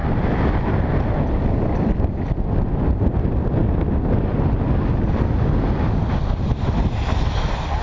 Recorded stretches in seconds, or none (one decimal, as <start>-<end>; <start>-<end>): 0.0-7.8